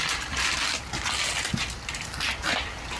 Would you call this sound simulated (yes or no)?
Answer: no